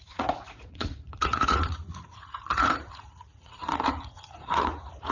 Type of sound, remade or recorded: remade